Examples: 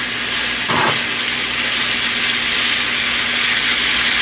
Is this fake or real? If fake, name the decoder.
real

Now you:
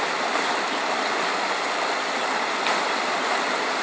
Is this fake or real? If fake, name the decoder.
real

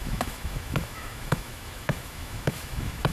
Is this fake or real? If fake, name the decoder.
fake, autoencoder, DAC-VAE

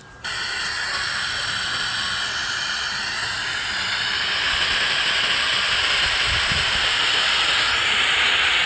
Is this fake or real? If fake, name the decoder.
real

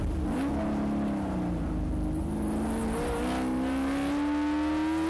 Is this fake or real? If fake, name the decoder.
real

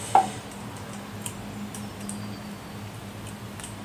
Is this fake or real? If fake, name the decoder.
real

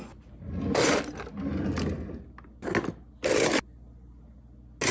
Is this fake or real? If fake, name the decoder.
real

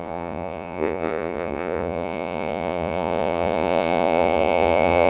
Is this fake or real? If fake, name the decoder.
fake, vocoder, Vocos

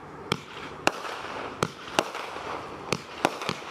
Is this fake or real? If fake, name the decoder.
fake, vocoder, BigVGAN v2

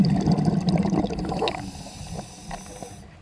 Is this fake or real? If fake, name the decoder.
real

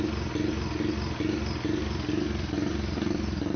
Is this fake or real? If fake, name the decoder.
real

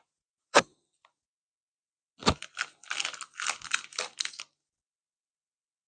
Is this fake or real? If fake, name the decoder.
real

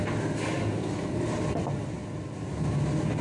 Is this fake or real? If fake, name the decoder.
real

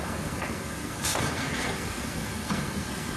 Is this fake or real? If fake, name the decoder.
fake, codec, SNAC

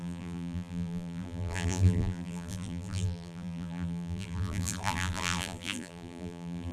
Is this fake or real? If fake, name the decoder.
fake, vocoder, BigVGAN v2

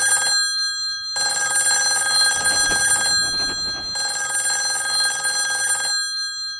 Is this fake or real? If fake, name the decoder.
real